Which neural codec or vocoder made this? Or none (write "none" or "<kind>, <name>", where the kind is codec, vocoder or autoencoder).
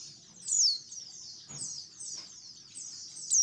none